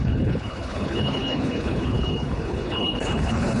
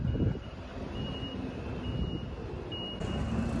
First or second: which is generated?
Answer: first